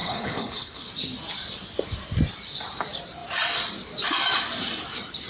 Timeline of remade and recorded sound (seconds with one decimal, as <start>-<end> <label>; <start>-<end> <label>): 0.0-0.9 remade; 0.9-5.3 recorded